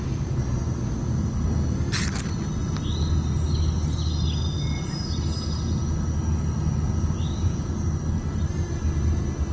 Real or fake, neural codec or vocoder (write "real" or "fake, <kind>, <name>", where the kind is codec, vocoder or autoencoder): real